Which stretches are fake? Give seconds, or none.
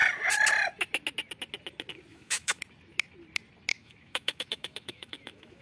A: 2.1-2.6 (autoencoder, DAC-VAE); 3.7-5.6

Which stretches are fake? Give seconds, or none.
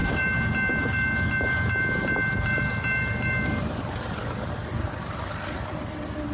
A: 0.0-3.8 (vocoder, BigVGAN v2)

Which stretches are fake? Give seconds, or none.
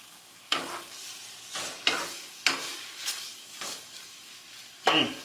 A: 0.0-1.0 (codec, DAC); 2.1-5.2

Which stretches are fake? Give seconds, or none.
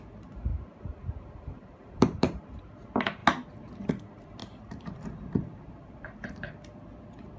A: 0.5-2.6 (vocoder, BigVGAN v2); 4.4-6.6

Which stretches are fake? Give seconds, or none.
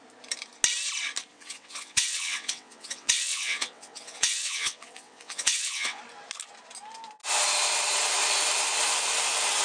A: 1.3-6.0 (vocoder, WaveNeXt)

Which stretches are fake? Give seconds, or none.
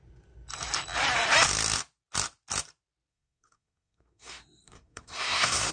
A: 3.1-5.7 (codec, SNAC)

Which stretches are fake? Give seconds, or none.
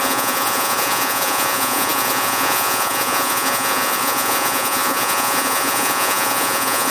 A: 0.0-6.9 (vocoder, Vocos)